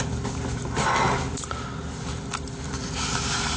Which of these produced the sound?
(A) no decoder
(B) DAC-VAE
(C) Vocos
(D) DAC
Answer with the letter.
A